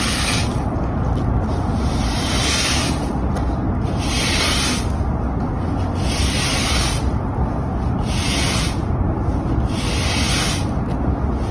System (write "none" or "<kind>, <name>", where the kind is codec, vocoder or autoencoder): none